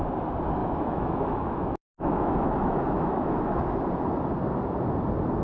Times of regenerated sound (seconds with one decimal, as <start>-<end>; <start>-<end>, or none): 0.6-3.8